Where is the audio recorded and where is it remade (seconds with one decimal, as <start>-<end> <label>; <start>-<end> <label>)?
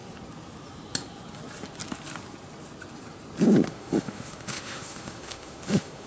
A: 0.0-3.7 recorded; 3.7-6.1 remade